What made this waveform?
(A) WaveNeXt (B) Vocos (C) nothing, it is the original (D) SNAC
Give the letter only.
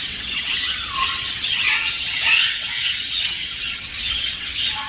A